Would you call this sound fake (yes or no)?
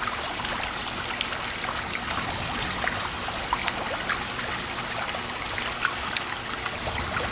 no